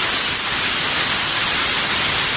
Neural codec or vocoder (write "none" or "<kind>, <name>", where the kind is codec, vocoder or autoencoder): none